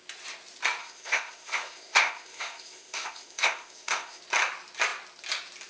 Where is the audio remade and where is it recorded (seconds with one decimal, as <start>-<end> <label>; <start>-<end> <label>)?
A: 0.0-0.8 recorded; 0.8-4.2 remade; 4.2-5.7 recorded